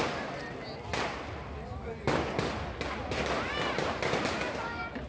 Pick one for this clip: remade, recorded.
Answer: recorded